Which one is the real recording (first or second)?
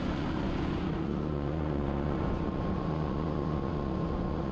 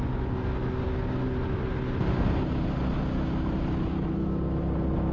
second